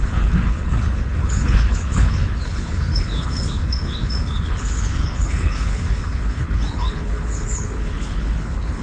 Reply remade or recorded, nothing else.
remade